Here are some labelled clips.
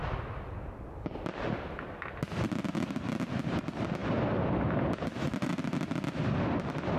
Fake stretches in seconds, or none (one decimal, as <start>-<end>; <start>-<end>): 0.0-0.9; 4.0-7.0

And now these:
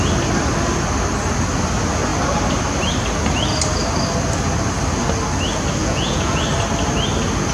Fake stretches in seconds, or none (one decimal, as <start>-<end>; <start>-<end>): 5.8-6.4

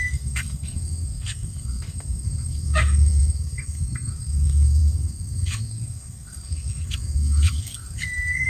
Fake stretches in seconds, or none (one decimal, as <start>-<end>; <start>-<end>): 0.0-8.5

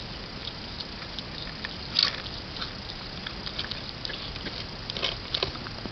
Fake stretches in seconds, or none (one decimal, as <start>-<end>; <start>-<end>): none

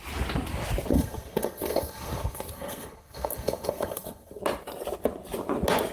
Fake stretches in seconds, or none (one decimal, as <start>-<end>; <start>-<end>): 0.9-4.4

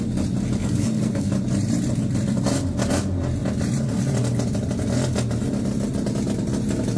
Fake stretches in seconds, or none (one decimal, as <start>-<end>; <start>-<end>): 0.6-1.3